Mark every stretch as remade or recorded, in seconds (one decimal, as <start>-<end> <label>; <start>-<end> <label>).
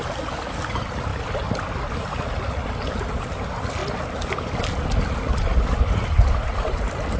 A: 0.0-7.2 recorded